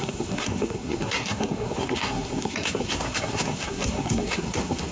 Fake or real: fake